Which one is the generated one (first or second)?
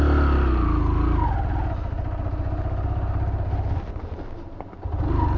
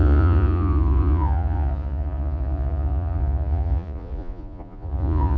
second